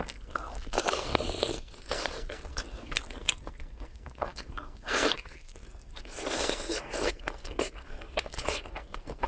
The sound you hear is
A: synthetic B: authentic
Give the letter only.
A